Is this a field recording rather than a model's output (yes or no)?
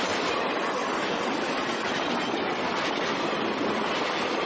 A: yes